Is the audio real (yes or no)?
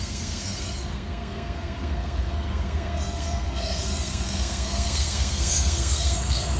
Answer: no